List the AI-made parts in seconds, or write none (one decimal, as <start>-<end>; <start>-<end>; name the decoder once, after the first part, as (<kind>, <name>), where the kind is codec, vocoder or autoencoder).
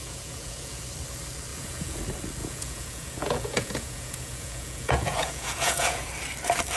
0.0-0.8 (vocoder, Vocos); 1.5-2.0; 2.4-6.1